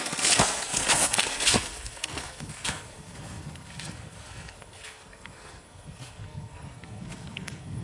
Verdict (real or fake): fake